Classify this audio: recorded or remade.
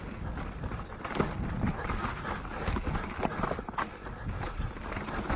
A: recorded